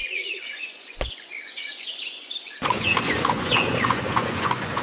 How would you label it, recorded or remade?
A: remade